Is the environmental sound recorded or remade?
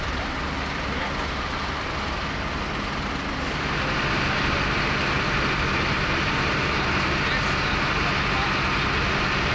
recorded